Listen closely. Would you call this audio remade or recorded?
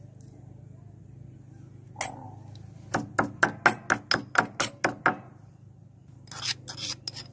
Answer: recorded